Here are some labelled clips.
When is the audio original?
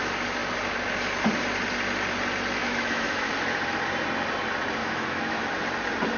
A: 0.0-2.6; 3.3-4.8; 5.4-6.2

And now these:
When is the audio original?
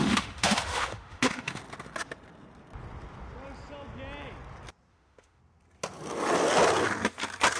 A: 1.6-4.9; 5.4-7.6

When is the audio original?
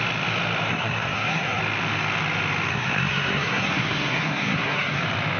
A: 0.0-0.7; 1.6-2.7; 5.0-5.4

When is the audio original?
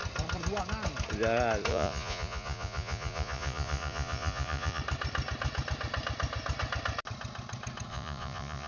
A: 0.0-1.7; 4.8-7.9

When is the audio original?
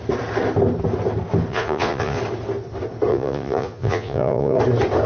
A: 0.0-1.5; 2.2-3.1; 4.6-5.1